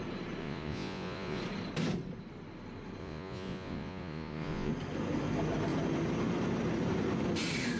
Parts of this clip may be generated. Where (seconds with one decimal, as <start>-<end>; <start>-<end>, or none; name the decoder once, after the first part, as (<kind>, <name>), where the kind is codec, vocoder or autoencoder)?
0.4-1.4 (vocoder, Vocos); 3.0-4.7